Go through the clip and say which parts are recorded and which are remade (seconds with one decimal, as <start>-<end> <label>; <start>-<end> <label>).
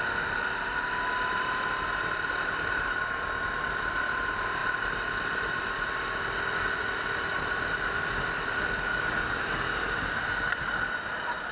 0.0-8.9 recorded; 8.9-9.8 remade; 9.8-11.5 recorded